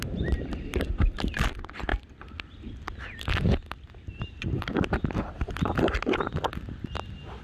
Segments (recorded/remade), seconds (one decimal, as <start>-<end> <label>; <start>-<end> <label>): 0.0-7.4 recorded